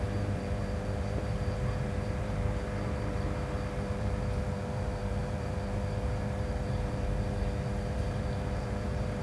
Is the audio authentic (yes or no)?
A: no